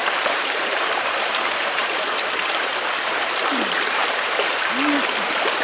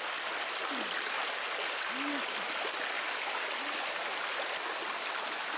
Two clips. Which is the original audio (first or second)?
second